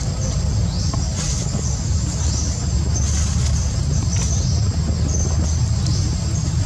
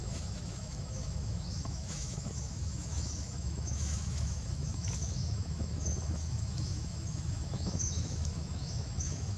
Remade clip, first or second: second